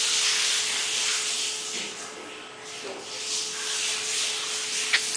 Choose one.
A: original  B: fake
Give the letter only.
A